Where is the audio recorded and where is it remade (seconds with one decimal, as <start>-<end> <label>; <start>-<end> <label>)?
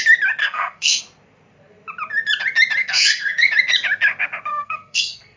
0.0-0.4 recorded; 0.4-1.0 remade; 1.0-2.8 recorded; 2.8-3.5 remade; 3.5-4.5 recorded; 4.5-5.4 remade